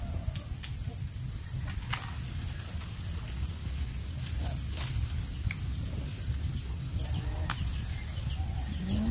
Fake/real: real